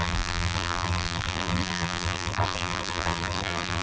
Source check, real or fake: fake